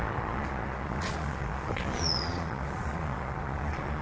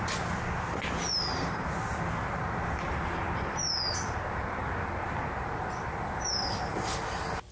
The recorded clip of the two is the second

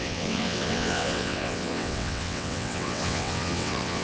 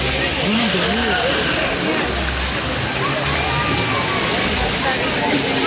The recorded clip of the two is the second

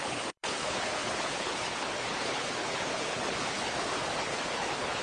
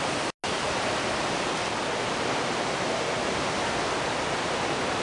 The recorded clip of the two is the second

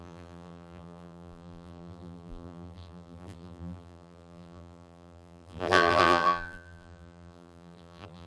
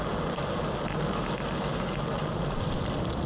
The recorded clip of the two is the second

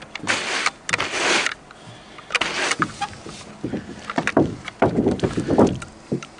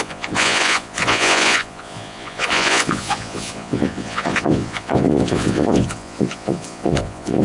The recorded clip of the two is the first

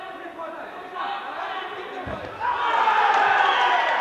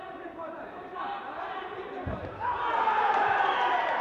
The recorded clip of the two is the first